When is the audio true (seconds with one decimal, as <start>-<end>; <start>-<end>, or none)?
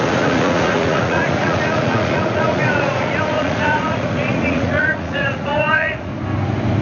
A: 6.1-6.8